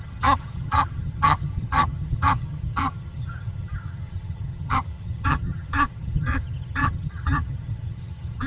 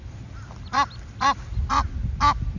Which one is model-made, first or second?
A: first